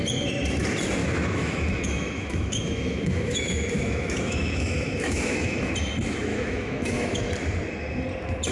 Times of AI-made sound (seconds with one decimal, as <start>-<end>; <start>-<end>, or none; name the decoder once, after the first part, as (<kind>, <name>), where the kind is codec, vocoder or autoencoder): 1.0-5.7 (autoencoder, DAC-VAE); 6.3-7.3